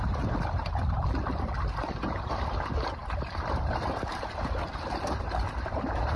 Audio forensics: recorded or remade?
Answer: recorded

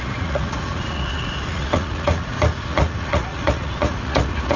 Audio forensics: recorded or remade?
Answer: remade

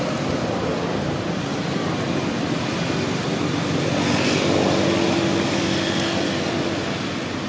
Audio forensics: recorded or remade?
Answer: recorded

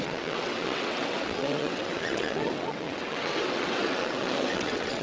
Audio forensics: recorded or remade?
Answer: remade